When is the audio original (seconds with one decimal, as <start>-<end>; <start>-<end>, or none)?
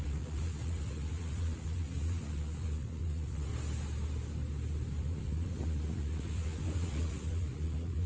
3.5-5.0